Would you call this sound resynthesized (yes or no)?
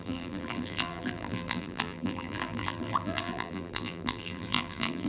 yes